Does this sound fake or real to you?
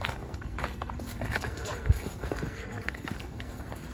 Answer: fake